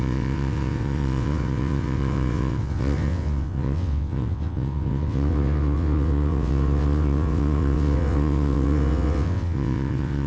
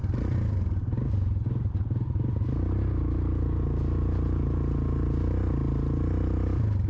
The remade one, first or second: first